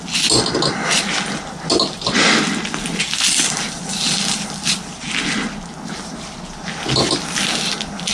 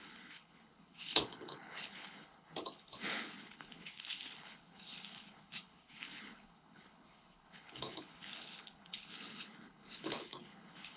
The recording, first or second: first